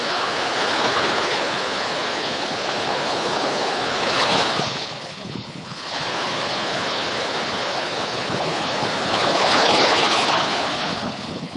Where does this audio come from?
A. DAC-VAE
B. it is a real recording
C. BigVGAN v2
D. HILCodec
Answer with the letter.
D